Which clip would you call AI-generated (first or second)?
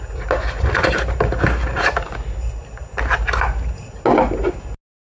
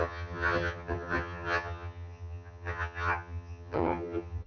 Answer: second